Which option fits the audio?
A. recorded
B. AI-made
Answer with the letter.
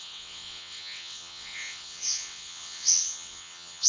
B